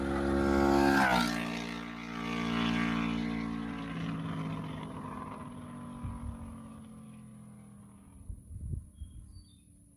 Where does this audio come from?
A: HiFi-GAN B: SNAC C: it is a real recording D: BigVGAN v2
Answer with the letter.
C